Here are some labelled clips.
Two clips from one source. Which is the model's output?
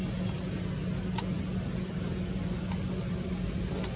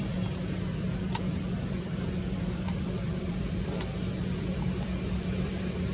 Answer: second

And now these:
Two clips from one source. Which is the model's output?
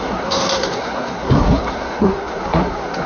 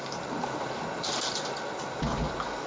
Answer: first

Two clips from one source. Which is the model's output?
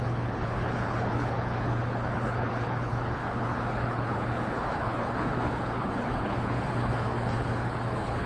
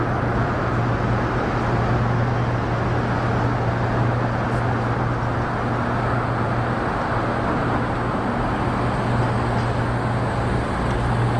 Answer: first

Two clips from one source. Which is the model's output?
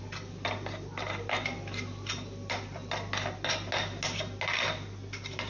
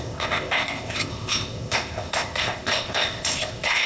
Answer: second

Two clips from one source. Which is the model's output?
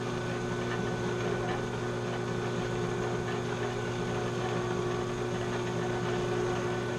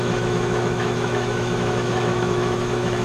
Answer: second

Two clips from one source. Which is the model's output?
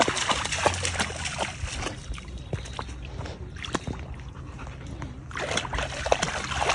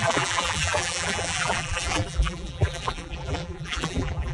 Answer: second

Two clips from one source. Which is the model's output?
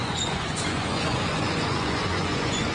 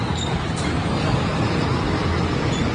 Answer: first